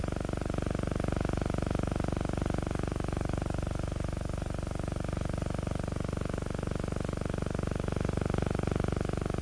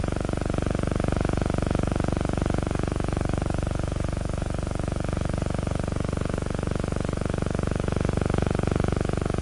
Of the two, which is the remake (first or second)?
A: second